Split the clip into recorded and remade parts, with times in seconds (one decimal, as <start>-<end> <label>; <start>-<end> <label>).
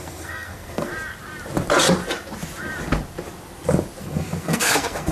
0.0-0.9 remade; 0.9-4.0 recorded; 4.0-5.1 remade